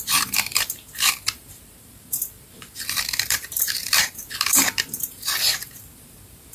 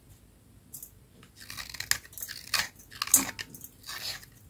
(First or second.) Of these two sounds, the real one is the second